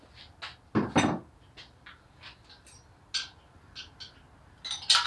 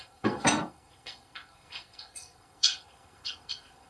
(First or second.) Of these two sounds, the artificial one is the second